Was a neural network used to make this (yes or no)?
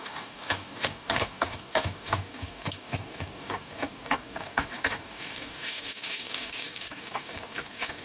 yes